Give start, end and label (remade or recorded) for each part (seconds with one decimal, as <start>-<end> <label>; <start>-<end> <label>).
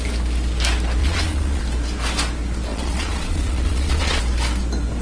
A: 0.0-1.0 recorded; 1.0-1.6 remade; 1.6-2.7 recorded; 2.7-4.2 remade; 4.2-5.0 recorded